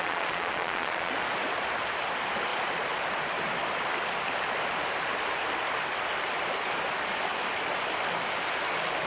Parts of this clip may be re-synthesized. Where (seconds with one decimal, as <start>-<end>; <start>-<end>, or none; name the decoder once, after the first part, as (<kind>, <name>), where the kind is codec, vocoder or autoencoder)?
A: 0.0-1.1 (vocoder, Vocos)